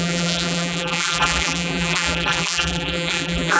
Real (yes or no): no